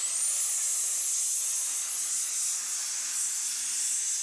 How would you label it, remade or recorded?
recorded